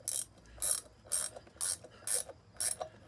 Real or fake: real